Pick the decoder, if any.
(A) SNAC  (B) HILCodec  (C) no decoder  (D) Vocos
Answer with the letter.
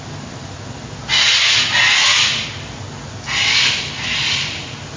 C